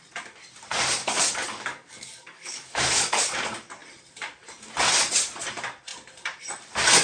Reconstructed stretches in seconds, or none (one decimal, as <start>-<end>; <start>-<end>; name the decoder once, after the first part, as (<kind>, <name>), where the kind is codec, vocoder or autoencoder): 1.0-3.2 (codec, DAC)